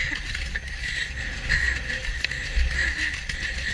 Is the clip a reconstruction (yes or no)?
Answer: no